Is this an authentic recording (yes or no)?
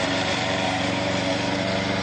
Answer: no